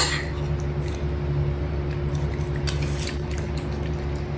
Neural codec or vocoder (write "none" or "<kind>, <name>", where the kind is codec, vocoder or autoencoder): none